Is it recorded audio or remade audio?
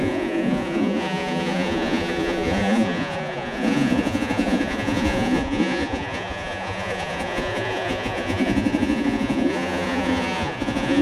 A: remade